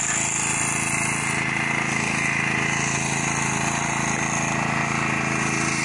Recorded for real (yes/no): yes